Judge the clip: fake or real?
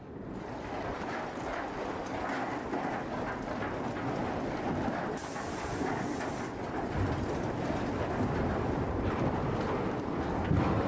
real